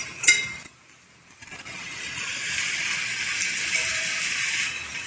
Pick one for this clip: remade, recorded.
recorded